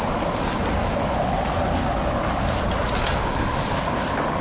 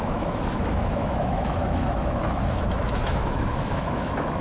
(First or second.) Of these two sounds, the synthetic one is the second